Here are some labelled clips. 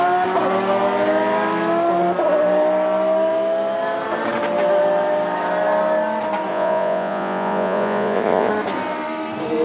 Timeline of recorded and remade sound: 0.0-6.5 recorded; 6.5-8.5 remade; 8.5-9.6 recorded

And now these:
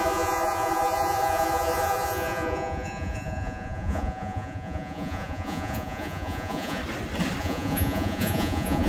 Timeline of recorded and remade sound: 0.0-6.8 remade; 6.8-7.4 recorded; 7.4-8.9 remade

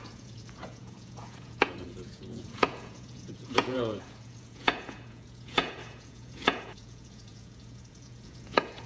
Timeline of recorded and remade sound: 0.0-8.9 remade

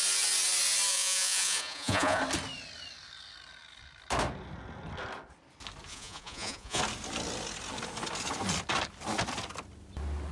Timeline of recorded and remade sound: 0.0-0.9 recorded; 0.9-2.2 remade; 2.2-5.9 recorded; 5.9-6.8 remade; 6.8-10.3 recorded

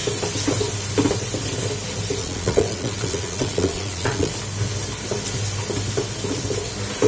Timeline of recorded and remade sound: 0.0-2.2 recorded; 2.2-4.3 remade; 4.3-7.1 recorded

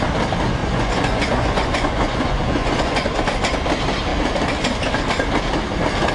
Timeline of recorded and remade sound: 0.0-0.6 recorded; 0.6-3.1 remade; 3.1-6.1 recorded